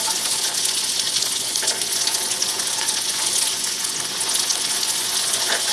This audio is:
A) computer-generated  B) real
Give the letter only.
A